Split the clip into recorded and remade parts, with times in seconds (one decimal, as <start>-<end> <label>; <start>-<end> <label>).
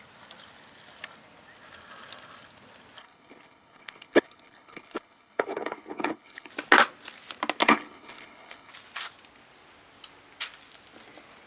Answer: 0.0-3.0 recorded; 3.0-6.5 remade; 6.5-7.6 recorded; 7.6-8.7 remade; 8.7-11.5 recorded